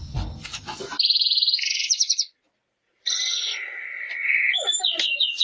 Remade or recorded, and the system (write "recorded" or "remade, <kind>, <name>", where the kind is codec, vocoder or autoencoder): recorded